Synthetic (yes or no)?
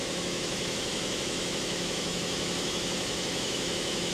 yes